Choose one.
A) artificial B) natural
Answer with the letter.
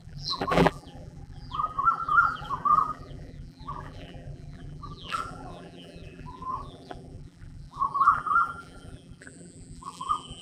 A